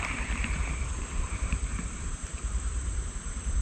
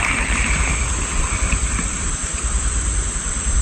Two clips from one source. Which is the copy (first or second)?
first